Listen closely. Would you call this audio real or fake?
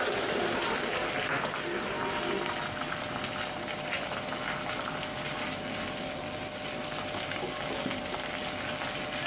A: real